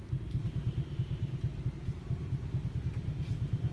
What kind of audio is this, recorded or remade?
recorded